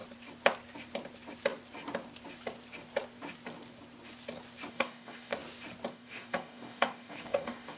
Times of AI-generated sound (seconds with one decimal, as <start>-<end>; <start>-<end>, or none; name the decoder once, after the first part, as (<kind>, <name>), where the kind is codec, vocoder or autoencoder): 4.7-5.3 (codec, DAC); 5.9-7.8

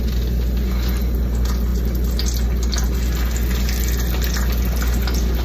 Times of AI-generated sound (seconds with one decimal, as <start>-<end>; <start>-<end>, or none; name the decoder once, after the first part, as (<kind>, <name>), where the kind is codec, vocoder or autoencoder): none

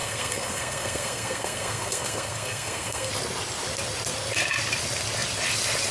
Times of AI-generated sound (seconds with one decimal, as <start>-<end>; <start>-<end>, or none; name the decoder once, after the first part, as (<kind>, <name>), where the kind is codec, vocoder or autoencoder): 0.0-3.1 (codec, SNAC)